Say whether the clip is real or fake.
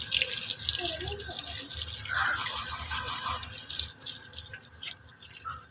real